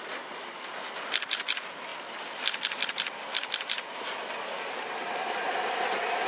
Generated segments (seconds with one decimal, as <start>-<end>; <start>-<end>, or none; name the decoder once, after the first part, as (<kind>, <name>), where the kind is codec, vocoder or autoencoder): none